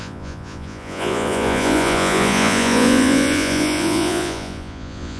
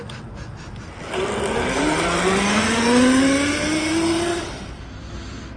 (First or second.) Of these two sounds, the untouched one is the second